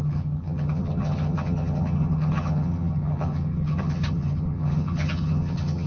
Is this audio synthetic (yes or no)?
yes